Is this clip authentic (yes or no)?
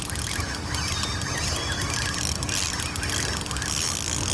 yes